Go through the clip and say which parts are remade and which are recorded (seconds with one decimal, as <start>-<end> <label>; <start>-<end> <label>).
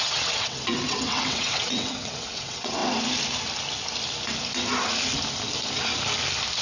0.0-2.8 remade; 2.8-6.6 recorded